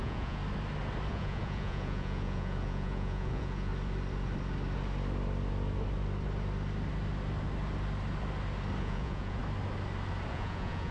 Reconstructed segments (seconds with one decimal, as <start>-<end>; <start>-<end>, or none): 0.0-0.4; 1.1-3.7; 8.8-9.4; 10.3-10.9